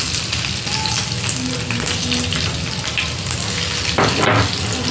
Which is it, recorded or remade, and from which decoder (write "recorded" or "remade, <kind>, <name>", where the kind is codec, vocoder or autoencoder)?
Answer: recorded